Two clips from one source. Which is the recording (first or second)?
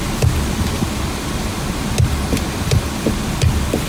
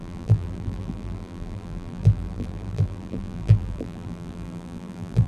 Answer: first